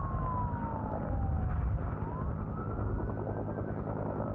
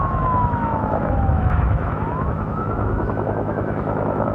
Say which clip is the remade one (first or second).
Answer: second